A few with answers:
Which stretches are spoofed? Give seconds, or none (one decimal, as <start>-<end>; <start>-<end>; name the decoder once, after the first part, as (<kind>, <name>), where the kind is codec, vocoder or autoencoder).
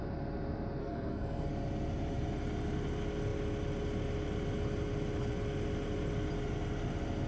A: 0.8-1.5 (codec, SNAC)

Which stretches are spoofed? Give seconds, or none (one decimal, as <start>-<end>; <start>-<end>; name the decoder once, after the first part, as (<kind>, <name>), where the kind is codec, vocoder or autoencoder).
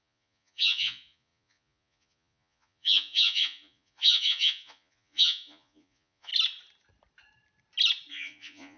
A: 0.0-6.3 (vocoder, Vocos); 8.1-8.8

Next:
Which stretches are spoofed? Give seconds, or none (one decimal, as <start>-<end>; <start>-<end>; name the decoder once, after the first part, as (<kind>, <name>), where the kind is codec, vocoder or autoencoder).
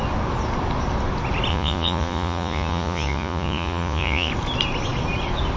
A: 1.5-4.3 (vocoder, Vocos)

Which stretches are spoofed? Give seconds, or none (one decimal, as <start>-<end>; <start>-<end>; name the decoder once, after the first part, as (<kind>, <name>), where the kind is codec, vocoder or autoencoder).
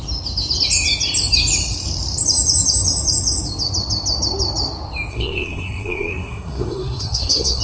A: 5.1-7.6 (codec, SNAC)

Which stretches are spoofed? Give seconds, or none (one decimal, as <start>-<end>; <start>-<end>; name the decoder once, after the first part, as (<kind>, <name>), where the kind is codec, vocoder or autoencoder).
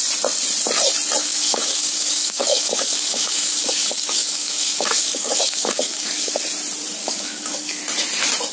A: 1.2-6.3 (codec, DAC); 7.0-7.8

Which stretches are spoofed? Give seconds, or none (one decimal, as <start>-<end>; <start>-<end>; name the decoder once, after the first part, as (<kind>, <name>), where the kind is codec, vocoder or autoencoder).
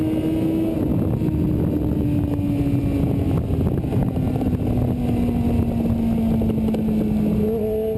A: none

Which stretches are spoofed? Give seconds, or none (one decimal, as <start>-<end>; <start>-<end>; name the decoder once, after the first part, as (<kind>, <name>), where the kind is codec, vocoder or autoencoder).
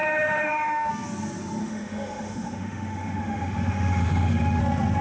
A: 0.0-0.9 (autoencoder, DAC-VAE); 1.6-4.6